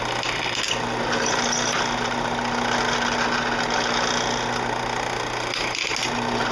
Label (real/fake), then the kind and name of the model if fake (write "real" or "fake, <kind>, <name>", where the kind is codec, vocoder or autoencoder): real